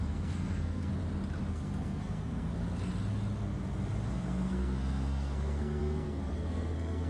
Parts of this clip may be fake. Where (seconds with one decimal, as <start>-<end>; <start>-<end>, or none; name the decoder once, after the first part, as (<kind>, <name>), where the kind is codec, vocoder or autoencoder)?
0.0-0.9 (codec, SNAC); 1.5-2.5; 4.1-7.1

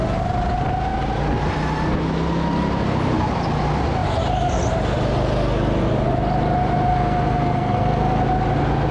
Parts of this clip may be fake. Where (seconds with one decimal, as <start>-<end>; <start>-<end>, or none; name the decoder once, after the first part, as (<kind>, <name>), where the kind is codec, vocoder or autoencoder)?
6.9-8.2 (codec, SNAC)

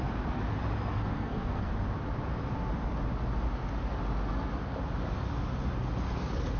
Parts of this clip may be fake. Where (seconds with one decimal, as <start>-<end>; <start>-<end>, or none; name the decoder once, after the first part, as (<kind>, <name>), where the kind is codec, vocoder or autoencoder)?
0.9-1.7 (codec, SNAC)

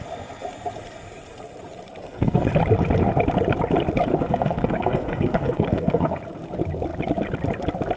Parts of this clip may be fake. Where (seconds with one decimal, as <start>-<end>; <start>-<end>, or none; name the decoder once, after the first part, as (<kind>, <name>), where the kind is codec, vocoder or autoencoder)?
2.0-2.5 (codec, SNAC); 4.1-6.2

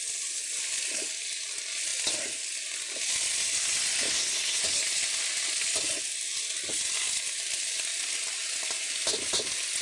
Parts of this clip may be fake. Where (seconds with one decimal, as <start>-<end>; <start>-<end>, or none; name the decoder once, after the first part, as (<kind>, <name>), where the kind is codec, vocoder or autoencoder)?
4.1-4.6 (codec, SNAC)

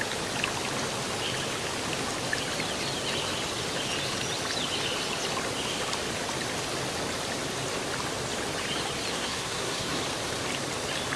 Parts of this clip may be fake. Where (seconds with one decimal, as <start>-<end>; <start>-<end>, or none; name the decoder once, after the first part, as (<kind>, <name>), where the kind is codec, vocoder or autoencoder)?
9.1-10.0 (codec, SNAC)